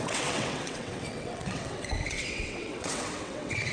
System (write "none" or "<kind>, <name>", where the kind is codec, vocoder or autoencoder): vocoder, WaveNeXt